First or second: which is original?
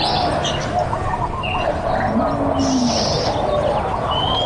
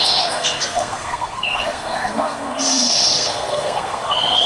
first